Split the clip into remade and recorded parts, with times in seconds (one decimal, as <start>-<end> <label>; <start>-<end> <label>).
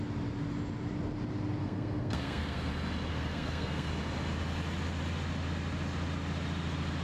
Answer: 0.0-1.6 recorded; 1.6-2.7 remade; 2.7-3.1 recorded; 3.1-3.9 remade; 3.9-7.0 recorded